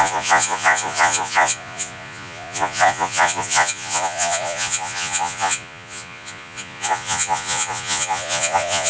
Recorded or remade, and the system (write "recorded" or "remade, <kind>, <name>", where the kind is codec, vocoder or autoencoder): remade, vocoder, Vocos